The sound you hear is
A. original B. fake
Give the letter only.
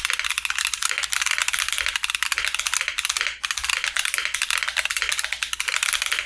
A